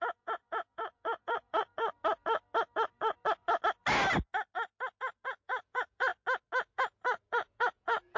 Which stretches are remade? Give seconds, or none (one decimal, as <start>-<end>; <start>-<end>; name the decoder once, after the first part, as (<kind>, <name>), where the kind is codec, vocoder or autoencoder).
0.0-1.7 (vocoder, Vocos); 5.0-6.1; 6.7-8.2